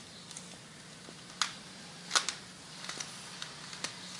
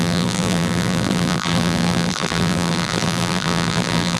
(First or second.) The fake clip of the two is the second